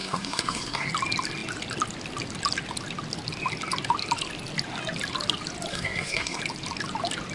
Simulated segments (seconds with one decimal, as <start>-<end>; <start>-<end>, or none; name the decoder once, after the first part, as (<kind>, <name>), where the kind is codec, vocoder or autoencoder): 0.0-0.9 (codec, SNAC); 5.7-6.4